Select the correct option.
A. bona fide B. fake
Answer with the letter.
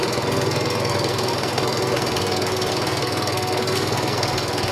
B